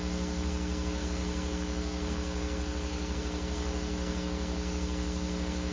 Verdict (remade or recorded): remade